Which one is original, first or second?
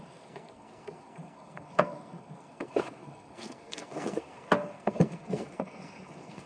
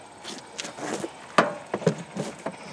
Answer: second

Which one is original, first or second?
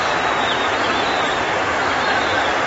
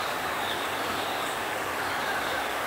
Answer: first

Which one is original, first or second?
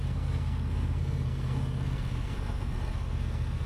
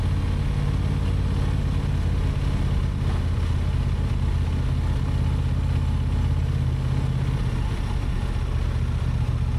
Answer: second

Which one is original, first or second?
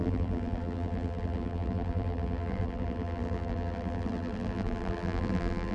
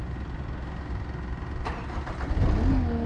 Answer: second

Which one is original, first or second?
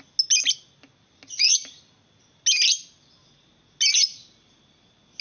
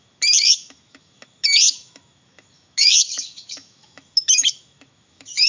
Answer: first